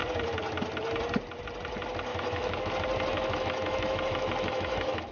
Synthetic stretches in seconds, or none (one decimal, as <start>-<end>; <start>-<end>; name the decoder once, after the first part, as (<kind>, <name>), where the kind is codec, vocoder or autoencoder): 2.1-2.7 (autoencoder, DAC-VAE); 3.1-5.1